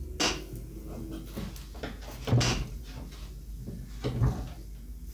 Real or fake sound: real